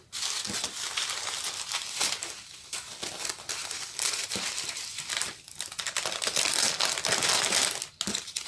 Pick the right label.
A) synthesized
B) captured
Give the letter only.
B